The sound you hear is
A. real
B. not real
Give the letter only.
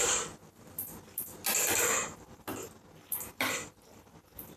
A